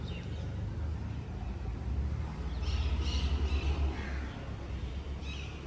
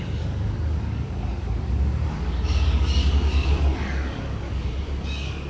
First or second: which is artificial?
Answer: second